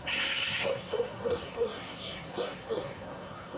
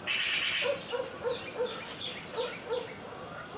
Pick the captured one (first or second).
second